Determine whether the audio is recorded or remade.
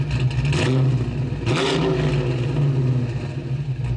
recorded